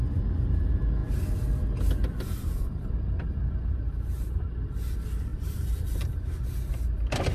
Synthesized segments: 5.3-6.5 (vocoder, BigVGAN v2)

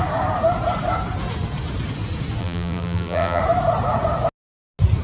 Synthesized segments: 2.4-3.4 (vocoder, BigVGAN v2)

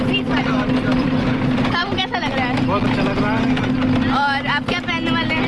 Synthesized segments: none

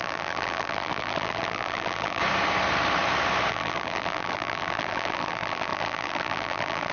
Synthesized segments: 0.0-2.2 (vocoder, BigVGAN v2); 3.5-6.9

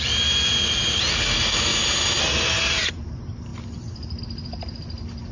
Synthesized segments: none